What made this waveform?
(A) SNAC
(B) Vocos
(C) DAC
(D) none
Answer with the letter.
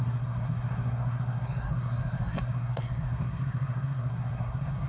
A